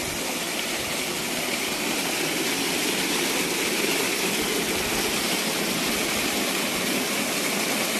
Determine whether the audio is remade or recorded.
recorded